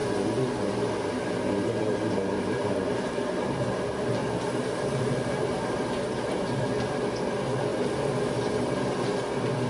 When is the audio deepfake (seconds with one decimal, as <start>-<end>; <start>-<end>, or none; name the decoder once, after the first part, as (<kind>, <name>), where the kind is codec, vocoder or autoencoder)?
1.9-6.7 (vocoder, BigVGAN v2)